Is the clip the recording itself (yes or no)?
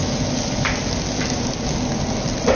yes